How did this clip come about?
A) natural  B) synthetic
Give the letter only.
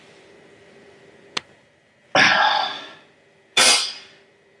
A